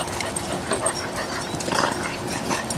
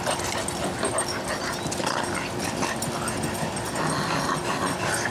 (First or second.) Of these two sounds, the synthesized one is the first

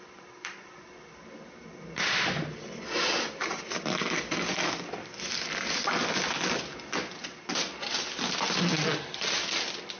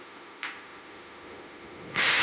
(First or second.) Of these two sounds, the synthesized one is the second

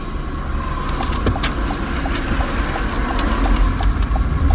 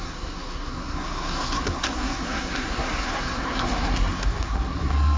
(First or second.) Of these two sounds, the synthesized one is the second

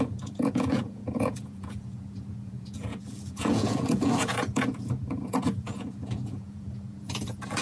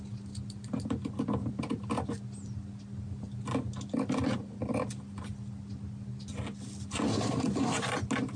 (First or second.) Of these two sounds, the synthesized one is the first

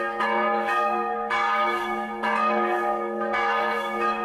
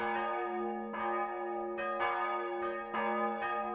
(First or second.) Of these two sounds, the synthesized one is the first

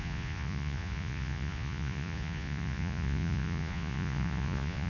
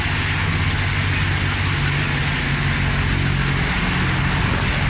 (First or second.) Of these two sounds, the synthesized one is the first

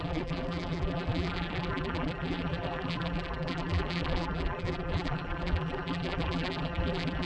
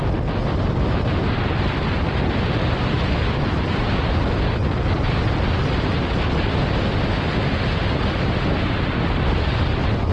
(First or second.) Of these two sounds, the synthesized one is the first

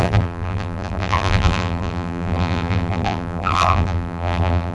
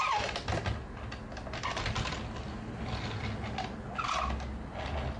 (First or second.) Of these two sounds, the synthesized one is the first